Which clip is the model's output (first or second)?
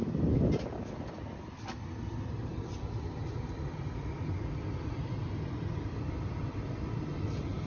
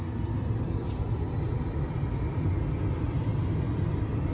first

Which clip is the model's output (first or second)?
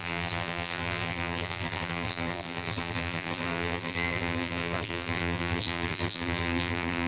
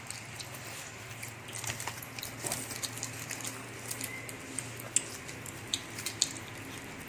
first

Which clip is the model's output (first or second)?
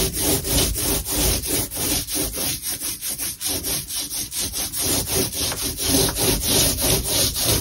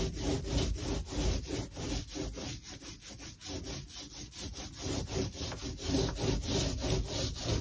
first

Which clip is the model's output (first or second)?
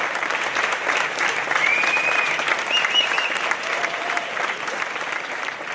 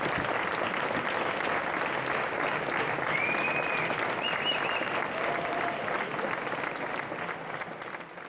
first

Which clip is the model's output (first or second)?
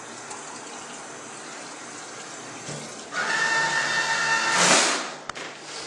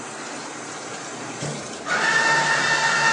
second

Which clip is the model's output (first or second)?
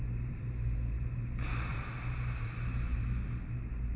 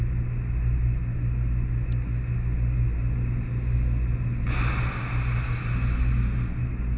first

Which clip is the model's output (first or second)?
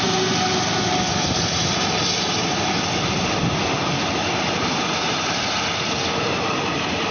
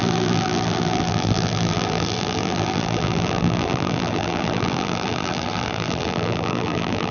second